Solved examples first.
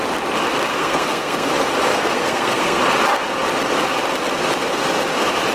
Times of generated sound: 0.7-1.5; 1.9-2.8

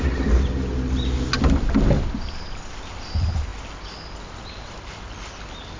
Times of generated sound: none

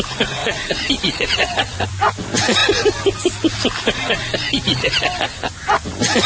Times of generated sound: 0.4-1.9

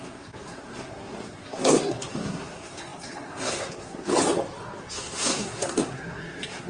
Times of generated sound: 0.0-4.1; 4.8-6.7

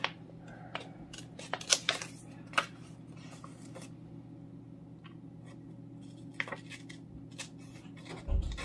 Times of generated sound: none

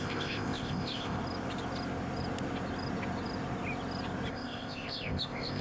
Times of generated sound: 0.0-1.2; 4.3-5.6

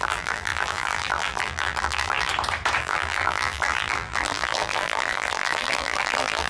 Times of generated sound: 0.0-2.3; 2.8-6.5